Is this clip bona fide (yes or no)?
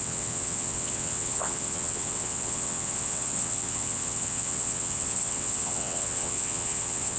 no